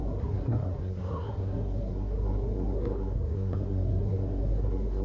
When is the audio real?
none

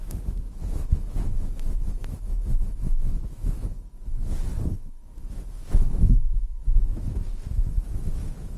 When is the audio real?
none

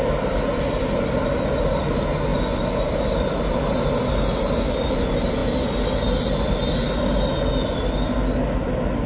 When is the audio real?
0.0-9.1

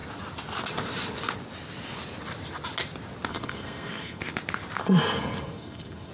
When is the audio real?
0.0-3.3; 4.2-4.8

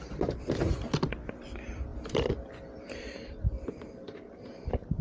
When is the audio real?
0.7-1.9